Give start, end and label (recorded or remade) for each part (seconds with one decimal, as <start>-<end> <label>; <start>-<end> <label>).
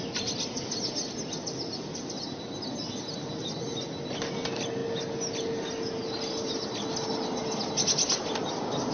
0.0-8.9 recorded